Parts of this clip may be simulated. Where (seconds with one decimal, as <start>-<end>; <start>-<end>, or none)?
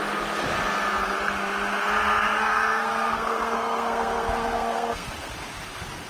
2.2-5.3